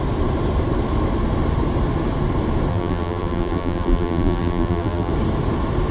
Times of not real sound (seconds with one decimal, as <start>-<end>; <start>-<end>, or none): 2.7-5.1